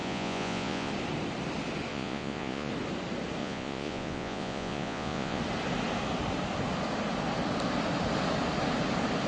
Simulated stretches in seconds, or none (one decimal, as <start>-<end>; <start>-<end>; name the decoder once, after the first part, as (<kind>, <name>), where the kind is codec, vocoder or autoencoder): 0.0-0.9 (vocoder, Vocos); 1.9-2.7; 3.4-5.4